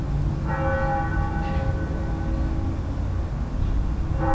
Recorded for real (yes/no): yes